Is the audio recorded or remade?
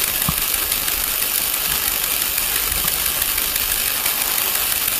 recorded